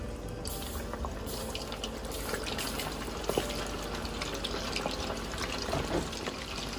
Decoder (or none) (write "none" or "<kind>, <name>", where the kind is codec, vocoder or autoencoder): none